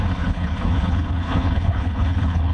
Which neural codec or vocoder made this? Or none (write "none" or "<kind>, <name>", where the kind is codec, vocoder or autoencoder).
codec, HILCodec